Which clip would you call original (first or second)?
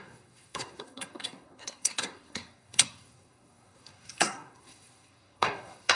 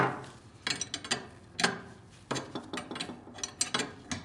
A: second